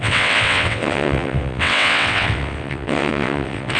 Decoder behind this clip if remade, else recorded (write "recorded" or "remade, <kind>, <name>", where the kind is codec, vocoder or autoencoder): remade, vocoder, WaveNeXt